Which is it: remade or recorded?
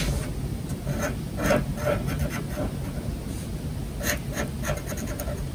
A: recorded